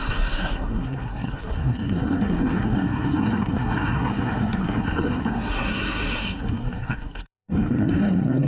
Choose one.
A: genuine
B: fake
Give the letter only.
B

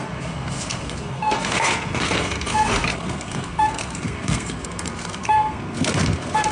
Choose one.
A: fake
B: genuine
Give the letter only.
A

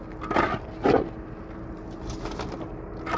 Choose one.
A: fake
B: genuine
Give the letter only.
B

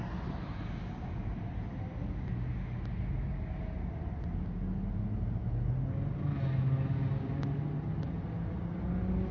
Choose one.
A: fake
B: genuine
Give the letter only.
B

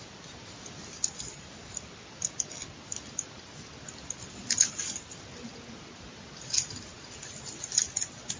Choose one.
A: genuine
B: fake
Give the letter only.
A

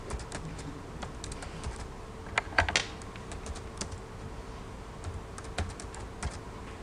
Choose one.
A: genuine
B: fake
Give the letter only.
A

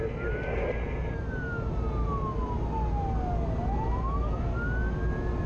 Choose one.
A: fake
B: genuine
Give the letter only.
B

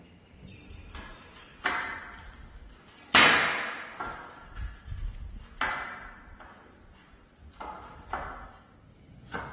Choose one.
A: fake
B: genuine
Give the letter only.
B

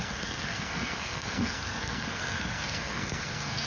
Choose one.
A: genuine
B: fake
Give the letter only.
B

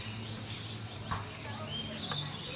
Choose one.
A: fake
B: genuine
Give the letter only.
B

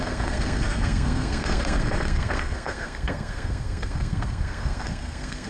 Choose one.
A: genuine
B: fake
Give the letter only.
B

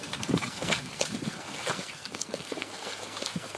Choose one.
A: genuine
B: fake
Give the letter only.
B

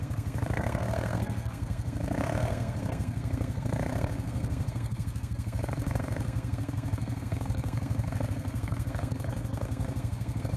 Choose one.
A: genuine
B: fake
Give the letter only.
B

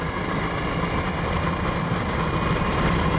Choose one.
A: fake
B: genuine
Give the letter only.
B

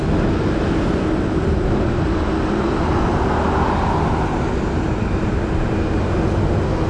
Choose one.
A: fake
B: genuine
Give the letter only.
B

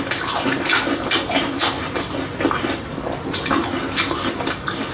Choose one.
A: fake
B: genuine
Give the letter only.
B